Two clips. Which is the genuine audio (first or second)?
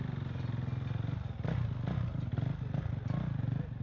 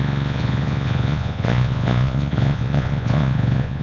first